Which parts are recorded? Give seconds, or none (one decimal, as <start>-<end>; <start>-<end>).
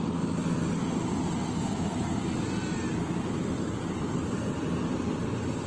0.0-1.4; 2.2-5.7